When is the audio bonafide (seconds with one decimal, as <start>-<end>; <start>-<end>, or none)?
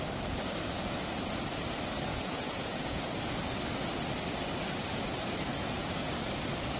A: 0.0-2.1; 3.0-5.5; 6.1-6.8